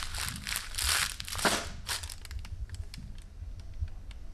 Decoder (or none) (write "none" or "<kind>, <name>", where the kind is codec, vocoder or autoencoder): none